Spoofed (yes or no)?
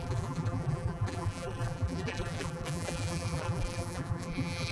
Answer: yes